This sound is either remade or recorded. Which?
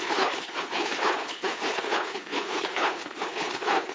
remade